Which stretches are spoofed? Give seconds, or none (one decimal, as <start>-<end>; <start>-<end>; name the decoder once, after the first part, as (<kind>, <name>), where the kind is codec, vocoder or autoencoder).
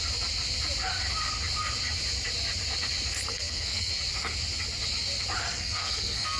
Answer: 3.3-3.9 (codec, SNAC); 5.4-6.4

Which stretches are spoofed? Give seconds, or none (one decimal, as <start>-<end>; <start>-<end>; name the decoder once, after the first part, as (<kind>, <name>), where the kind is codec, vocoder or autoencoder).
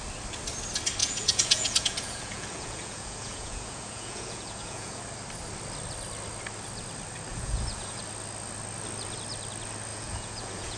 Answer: 1.0-5.0 (vocoder, Vocos); 7.3-8.0; 9.9-10.8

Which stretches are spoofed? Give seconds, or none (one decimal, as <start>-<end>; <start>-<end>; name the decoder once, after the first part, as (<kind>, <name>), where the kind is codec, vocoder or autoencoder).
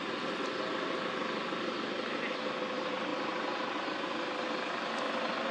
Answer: none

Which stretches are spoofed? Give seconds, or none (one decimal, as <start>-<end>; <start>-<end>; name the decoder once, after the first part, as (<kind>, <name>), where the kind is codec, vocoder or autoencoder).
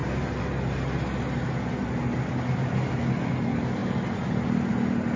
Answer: none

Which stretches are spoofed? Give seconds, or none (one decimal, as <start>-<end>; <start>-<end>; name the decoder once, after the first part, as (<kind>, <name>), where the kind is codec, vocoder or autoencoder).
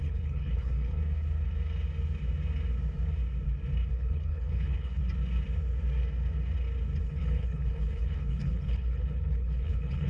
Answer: 0.0-1.0 (codec, HILCodec); 3.9-5.0; 7.0-10.1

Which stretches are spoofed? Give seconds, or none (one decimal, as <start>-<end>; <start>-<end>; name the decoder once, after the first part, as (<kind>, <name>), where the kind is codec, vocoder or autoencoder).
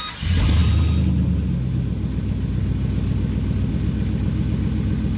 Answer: none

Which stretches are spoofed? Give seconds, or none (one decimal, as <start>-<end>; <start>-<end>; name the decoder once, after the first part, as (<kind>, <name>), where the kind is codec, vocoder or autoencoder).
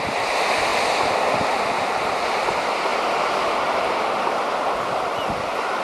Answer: none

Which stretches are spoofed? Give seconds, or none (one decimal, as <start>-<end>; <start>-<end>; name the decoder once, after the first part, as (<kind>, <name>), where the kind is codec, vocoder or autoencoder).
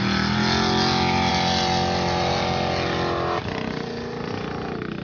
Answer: none